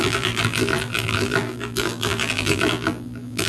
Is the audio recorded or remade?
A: remade